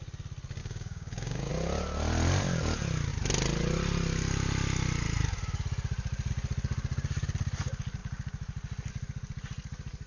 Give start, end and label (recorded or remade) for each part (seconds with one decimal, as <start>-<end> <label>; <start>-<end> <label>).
0.0-0.6 recorded; 0.6-1.5 remade; 1.5-10.1 recorded